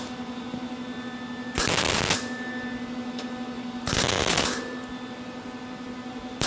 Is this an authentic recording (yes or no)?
yes